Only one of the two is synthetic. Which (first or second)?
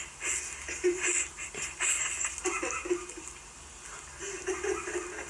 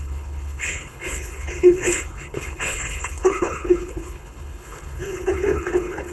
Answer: second